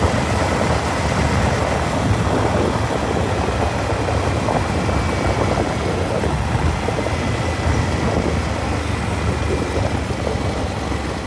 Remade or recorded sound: recorded